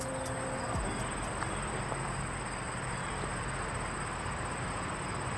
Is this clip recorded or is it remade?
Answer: recorded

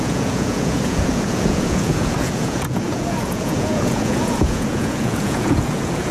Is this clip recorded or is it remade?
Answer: remade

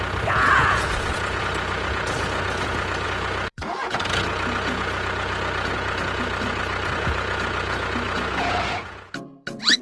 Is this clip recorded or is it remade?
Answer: remade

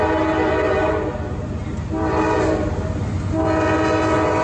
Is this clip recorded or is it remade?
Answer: recorded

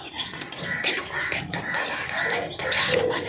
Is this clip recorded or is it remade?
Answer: recorded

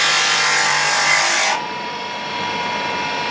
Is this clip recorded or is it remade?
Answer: recorded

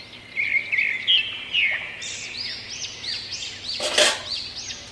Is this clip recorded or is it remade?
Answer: recorded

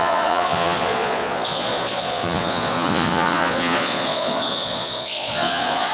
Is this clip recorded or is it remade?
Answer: remade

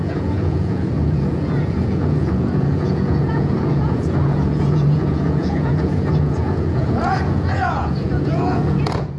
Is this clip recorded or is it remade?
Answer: remade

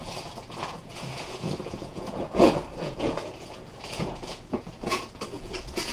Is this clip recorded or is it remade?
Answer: remade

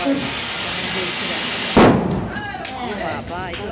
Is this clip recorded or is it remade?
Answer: recorded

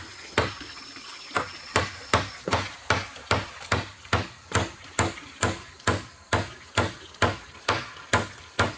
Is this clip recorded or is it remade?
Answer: recorded